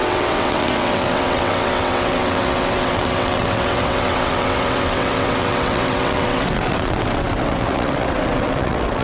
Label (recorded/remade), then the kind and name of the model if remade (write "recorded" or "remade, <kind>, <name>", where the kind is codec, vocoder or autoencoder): remade, vocoder, WaveNeXt